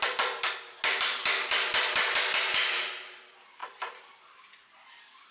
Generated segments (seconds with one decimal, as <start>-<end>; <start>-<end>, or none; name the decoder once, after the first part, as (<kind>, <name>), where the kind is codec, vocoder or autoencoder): none